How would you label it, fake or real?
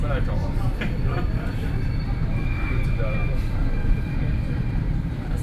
fake